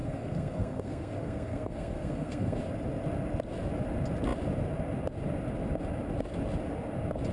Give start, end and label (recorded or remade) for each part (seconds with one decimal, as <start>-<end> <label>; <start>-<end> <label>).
0.0-2.6 remade; 2.6-7.3 recorded